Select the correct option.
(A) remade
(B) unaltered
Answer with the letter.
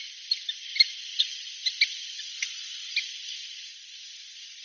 B